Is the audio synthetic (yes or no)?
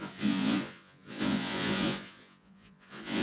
yes